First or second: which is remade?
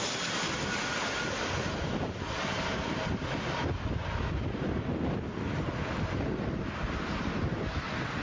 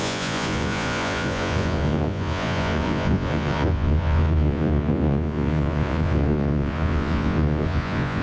second